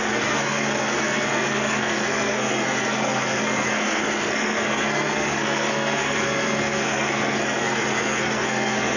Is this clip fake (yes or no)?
yes